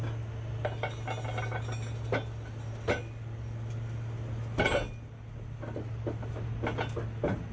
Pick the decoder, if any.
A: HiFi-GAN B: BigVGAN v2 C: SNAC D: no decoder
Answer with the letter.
D